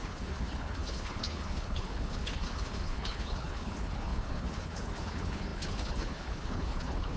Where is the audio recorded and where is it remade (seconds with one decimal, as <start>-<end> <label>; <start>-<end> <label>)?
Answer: 0.0-7.2 remade